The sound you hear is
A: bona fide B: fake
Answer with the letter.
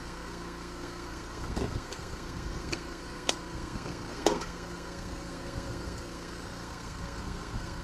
B